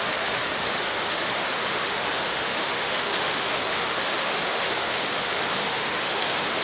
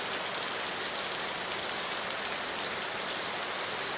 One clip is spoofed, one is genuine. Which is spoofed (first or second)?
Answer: first